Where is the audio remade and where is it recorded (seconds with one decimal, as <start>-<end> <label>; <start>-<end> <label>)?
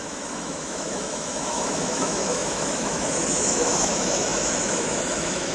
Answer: 0.0-5.5 remade